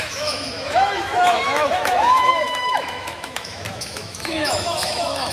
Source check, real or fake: fake